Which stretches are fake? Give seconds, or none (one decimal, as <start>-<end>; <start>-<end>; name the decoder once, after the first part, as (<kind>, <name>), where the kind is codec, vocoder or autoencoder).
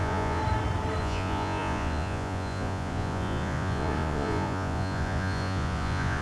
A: 0.0-0.4 (vocoder, Vocos); 1.0-6.2